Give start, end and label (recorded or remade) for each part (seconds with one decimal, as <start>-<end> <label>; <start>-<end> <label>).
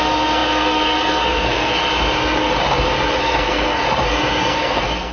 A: 0.0-1.8 remade; 1.8-3.2 recorded; 3.2-3.8 remade; 3.8-4.4 recorded; 4.4-5.1 remade